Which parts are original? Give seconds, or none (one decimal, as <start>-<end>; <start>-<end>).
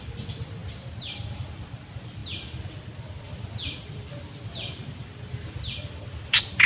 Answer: 0.6-1.4